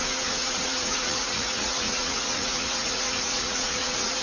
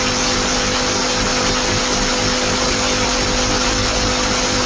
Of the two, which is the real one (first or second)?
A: second